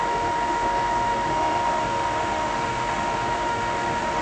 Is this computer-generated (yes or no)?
yes